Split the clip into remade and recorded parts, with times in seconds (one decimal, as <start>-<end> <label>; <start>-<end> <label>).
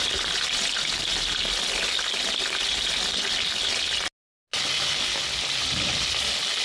0.0-6.6 recorded